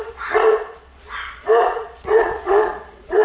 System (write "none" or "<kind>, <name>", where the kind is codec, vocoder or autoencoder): vocoder, Vocos